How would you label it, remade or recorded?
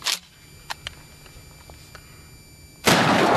recorded